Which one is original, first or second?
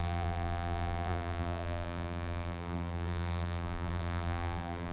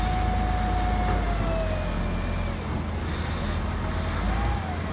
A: second